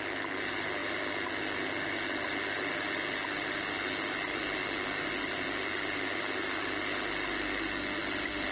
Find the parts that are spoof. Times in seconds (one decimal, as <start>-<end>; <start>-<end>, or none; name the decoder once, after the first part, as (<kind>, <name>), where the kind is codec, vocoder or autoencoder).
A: none